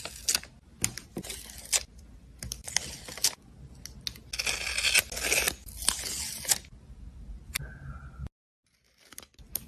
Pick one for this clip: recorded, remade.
recorded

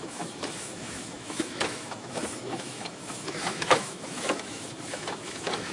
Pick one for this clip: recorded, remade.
remade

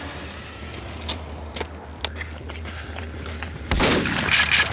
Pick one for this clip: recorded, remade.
recorded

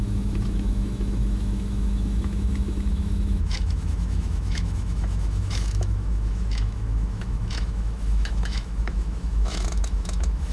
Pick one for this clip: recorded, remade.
remade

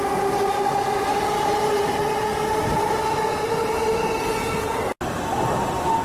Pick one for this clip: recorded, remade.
recorded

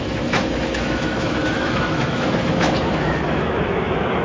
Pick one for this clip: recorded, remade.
remade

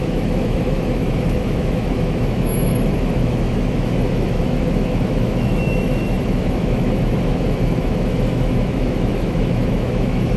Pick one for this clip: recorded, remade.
remade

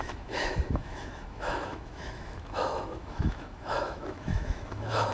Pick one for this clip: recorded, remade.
remade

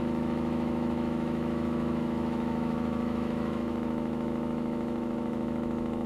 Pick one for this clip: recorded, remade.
remade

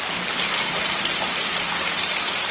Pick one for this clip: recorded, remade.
recorded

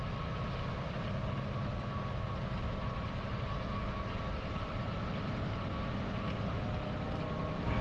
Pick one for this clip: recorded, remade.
recorded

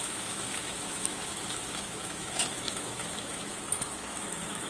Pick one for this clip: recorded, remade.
remade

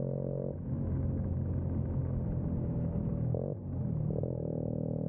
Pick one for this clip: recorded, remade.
recorded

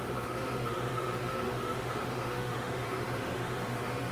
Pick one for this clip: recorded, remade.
remade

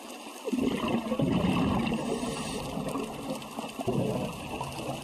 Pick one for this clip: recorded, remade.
recorded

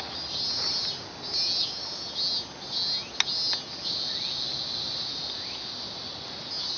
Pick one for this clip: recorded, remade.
recorded